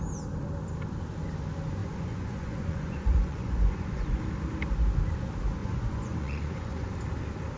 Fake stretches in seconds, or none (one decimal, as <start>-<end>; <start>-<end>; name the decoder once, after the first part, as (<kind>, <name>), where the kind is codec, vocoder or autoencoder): 1.8-4.2 (vocoder, Vocos); 5.6-6.9